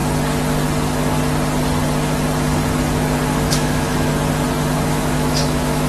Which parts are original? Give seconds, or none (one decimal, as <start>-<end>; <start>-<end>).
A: 0.0-3.5; 4.1-4.9